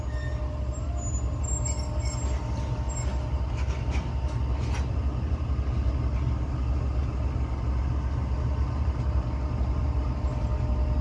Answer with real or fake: real